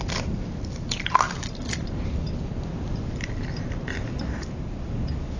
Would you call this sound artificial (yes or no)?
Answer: no